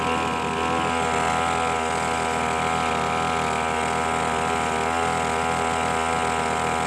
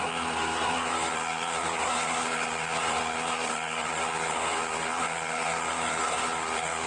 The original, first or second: first